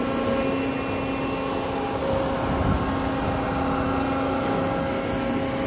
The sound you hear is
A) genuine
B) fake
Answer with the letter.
A